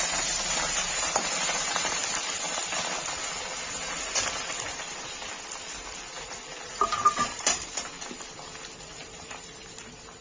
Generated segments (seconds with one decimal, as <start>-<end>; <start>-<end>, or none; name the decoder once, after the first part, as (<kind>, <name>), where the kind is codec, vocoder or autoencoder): 0.0-2.0 (vocoder, BigVGAN v2); 6.7-7.9; 9.1-10.2

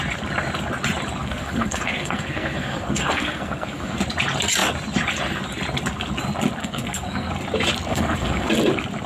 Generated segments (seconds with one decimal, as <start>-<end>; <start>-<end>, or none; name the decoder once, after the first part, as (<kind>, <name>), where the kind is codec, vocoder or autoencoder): 1.2-4.0 (codec, SNAC); 6.6-7.3; 7.9-8.5

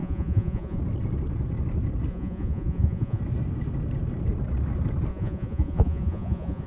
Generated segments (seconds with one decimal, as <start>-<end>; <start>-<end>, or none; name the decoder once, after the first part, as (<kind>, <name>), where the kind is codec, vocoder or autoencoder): 0.0-0.8 (vocoder, Vocos); 2.1-3.2; 5.1-6.7